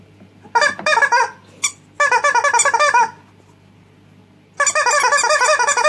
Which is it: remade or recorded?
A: recorded